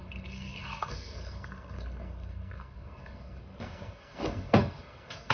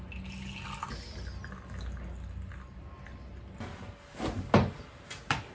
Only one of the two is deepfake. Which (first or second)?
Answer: first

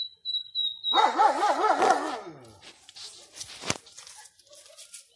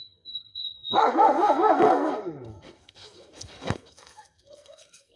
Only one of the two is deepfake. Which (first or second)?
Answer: second